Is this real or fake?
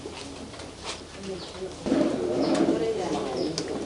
real